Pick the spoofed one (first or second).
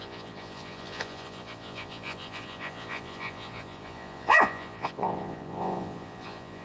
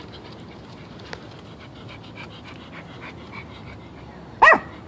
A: first